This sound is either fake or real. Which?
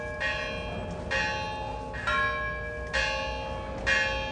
real